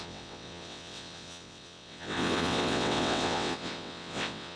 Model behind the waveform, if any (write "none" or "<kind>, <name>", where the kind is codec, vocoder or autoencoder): vocoder, WaveNeXt